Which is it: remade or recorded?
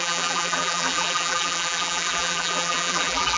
remade